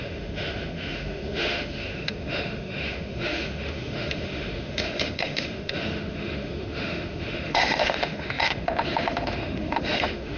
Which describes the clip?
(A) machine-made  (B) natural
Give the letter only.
A